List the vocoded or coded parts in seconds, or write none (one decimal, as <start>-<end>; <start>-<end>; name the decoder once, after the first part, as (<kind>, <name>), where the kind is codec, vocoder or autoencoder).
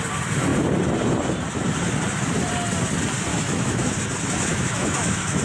3.3-3.9 (autoencoder, DAC-VAE); 4.5-5.4